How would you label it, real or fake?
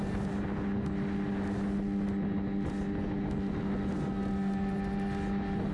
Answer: real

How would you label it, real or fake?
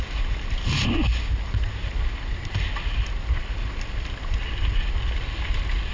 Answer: real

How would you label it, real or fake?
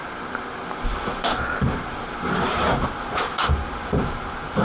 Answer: fake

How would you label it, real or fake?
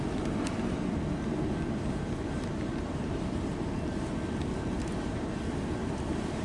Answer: real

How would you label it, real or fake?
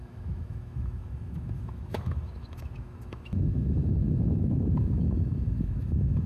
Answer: fake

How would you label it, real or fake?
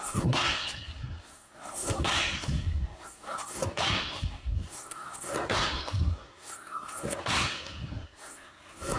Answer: fake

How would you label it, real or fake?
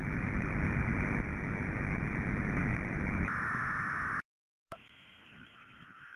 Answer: fake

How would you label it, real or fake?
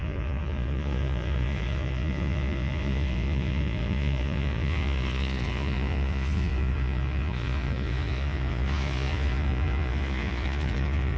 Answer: fake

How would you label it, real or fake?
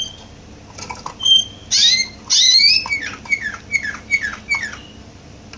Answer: real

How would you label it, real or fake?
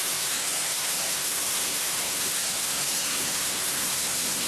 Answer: fake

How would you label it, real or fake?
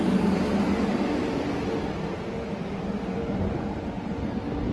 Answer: real